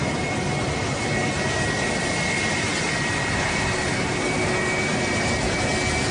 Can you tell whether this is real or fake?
real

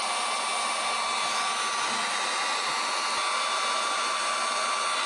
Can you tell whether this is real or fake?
real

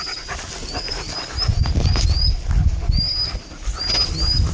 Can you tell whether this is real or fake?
real